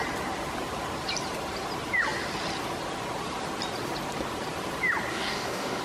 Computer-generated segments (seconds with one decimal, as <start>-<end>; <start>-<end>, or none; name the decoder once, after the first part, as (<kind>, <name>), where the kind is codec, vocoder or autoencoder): 5.1-5.8 (codec, DAC)